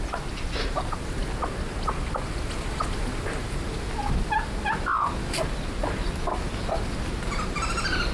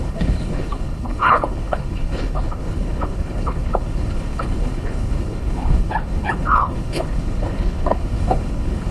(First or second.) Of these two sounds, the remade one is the second